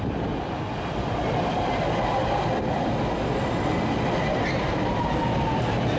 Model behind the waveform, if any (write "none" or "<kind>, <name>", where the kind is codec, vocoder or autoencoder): none